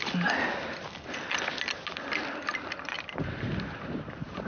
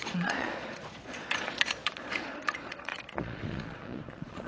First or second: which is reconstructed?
second